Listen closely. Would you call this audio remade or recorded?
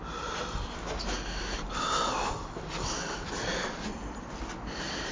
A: recorded